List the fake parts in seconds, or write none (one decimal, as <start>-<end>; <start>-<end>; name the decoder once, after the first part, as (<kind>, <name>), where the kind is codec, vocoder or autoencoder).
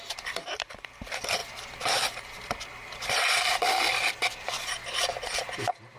0.0-6.0 (vocoder, BigVGAN v2)